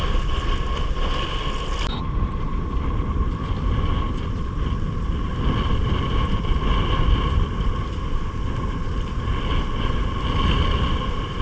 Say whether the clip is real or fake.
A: real